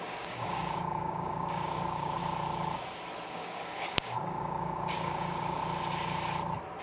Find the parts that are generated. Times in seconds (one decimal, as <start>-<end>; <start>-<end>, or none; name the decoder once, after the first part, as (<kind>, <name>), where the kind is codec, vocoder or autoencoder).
0.0-2.2 (codec, DAC); 3.3-5.6